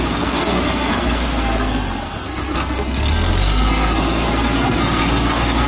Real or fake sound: fake